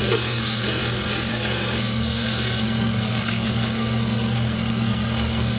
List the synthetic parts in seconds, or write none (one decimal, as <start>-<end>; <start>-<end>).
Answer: 0.0-0.8; 1.3-5.6